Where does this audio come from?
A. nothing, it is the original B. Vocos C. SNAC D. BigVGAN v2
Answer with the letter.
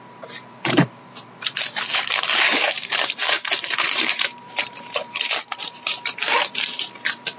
D